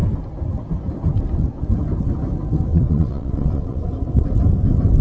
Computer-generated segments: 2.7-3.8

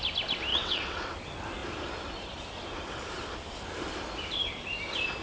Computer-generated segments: 0.5-1.1

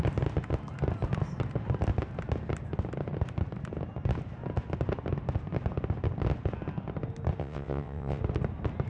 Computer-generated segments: 7.4-8.2

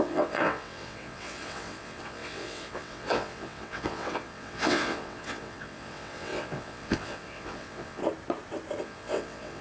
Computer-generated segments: 0.0-8.0; 8.8-9.6

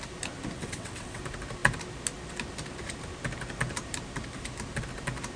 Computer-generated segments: 0.6-1.2